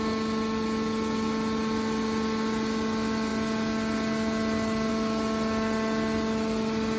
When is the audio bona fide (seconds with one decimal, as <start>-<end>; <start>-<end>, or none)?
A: 0.0-7.0